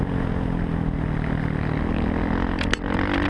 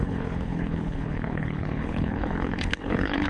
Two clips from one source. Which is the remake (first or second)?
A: second